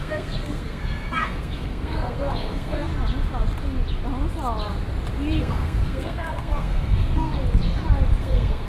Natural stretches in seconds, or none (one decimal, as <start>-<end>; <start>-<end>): 2.9-5.4; 7.4-8.2